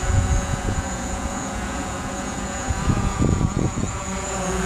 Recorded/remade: remade